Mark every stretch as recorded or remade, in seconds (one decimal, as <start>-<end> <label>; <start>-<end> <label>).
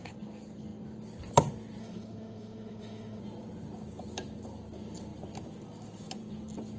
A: 0.0-1.8 recorded; 1.8-3.2 remade; 3.2-6.8 recorded